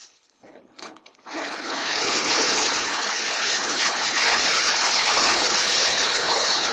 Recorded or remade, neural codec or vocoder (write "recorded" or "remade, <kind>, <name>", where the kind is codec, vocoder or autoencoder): remade, codec, HILCodec